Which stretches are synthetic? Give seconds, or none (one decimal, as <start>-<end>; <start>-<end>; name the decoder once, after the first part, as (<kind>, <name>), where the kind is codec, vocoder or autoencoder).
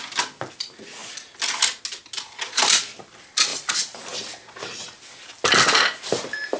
none